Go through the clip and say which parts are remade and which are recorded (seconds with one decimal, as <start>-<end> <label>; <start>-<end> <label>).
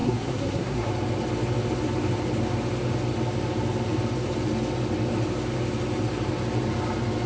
0.0-0.9 remade; 0.9-7.3 recorded